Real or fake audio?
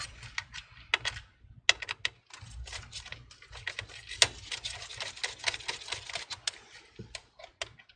real